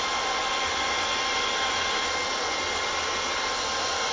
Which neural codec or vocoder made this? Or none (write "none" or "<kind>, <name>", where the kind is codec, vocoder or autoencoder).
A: none